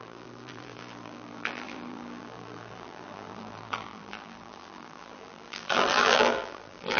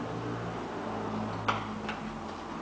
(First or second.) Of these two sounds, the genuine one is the second